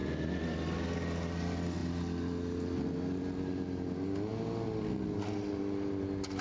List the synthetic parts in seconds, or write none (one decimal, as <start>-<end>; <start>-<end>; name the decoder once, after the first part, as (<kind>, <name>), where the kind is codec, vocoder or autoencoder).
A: none